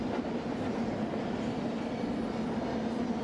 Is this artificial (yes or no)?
no